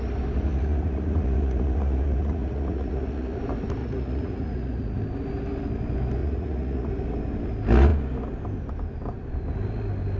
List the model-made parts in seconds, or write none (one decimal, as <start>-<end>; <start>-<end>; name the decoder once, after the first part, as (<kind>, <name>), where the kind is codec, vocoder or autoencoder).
0.5-3.4 (vocoder, Vocos); 3.8-5.0; 6.2-6.9